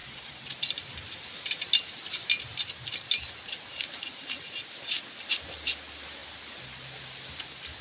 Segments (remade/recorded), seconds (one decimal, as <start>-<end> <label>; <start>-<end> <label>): 0.0-4.5 remade; 4.5-7.8 recorded